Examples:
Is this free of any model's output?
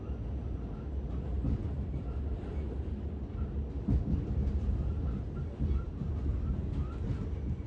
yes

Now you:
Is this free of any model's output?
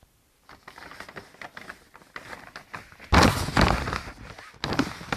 yes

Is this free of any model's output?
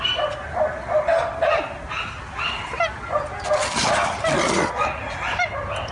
yes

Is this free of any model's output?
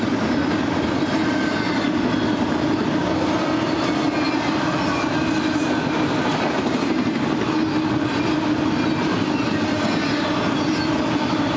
yes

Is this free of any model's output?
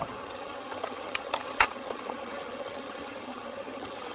no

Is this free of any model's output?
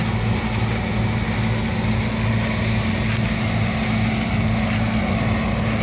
yes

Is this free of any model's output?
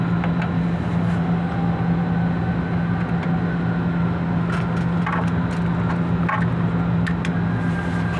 yes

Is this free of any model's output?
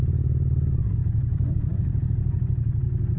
yes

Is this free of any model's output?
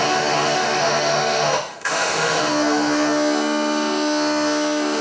no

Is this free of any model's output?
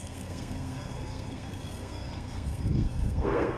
no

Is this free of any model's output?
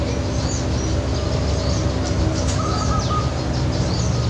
yes